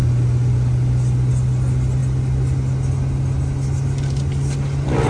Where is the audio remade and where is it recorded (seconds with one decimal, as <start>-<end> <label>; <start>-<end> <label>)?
0.0-5.1 recorded